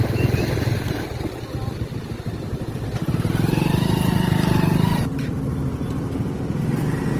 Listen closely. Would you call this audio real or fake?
real